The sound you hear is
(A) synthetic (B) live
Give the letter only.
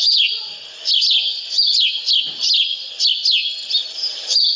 B